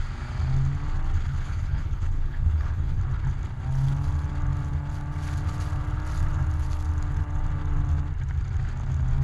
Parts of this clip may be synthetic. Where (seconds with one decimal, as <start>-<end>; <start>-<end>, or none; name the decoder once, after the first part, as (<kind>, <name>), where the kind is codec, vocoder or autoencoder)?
1.3-3.0 (codec, HILCodec)